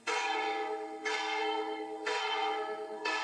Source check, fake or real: fake